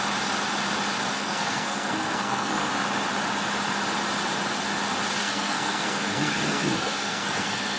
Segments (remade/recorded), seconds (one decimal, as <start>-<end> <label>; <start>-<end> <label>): 0.0-1.2 recorded; 1.2-2.7 remade; 2.7-5.2 recorded; 5.2-7.8 remade

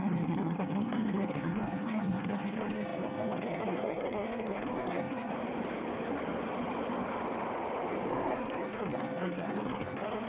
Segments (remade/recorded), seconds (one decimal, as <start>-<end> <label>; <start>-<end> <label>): 0.0-5.3 remade; 5.3-8.1 recorded; 8.1-10.3 remade

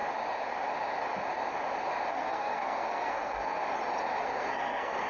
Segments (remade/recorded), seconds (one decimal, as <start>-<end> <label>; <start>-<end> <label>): 0.0-2.1 recorded; 2.1-3.6 remade; 3.6-4.2 recorded; 4.2-5.1 remade

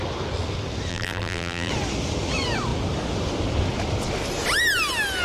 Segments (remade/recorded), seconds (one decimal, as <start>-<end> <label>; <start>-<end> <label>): 0.0-0.9 recorded; 0.9-1.7 remade; 1.7-5.2 recorded

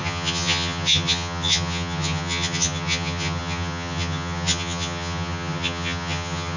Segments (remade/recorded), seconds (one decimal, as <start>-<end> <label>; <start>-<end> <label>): 0.0-6.6 remade

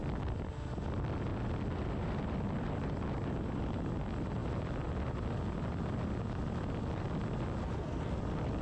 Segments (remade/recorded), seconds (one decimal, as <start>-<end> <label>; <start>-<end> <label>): 0.0-7.6 recorded; 7.6-8.2 remade; 8.2-8.6 recorded